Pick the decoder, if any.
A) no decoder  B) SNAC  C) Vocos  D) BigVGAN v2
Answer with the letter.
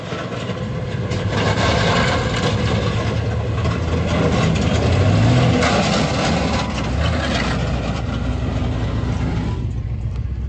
A